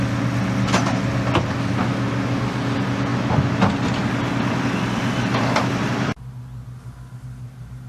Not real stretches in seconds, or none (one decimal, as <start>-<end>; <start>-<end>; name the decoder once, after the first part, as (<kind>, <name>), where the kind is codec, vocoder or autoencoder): none